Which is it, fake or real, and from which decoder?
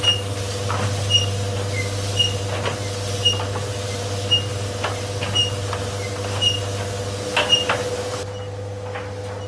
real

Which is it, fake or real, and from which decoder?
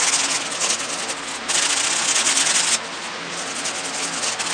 real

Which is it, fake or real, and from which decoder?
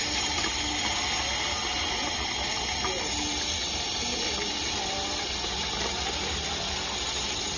real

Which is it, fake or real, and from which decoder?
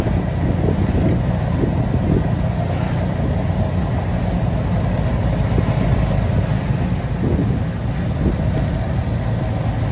real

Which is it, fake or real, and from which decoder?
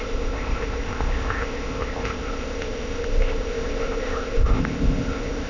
fake, codec, ZipCodec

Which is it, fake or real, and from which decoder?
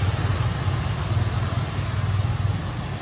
real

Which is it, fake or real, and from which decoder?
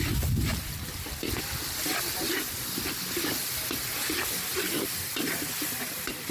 real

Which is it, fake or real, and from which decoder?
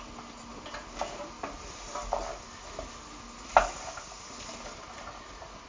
real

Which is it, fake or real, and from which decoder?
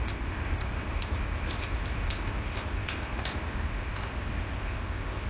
fake, codec, ZipCodec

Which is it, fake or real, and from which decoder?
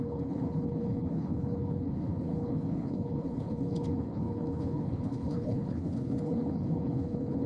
fake, codec, HILCodec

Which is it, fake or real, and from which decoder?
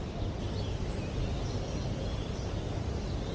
real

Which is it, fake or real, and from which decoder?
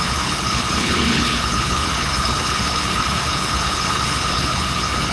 fake, codec, HILCodec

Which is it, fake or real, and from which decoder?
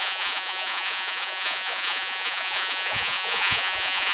fake, vocoder, Vocos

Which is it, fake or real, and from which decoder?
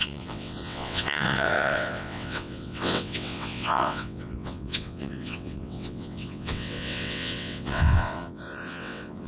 fake, vocoder, WaveNeXt